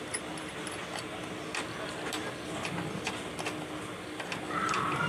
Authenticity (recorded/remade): recorded